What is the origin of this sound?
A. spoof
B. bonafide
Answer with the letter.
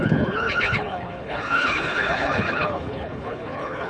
A